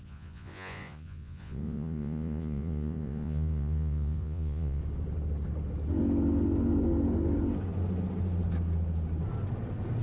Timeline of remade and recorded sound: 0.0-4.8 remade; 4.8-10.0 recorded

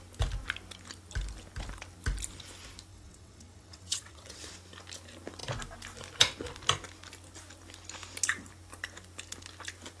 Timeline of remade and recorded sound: 0.0-2.9 recorded; 2.9-4.5 remade; 4.5-10.0 recorded

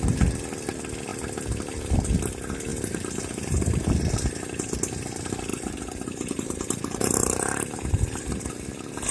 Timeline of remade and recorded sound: 0.0-2.7 recorded; 2.7-3.9 remade; 3.9-5.5 recorded; 5.5-8.5 remade; 8.5-9.1 recorded

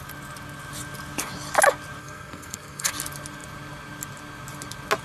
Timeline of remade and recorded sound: 0.0-2.0 recorded; 2.0-2.9 remade; 2.9-5.0 recorded

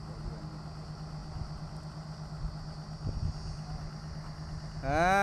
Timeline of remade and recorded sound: 0.0-5.2 recorded